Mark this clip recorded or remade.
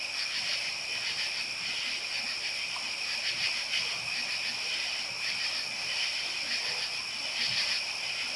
recorded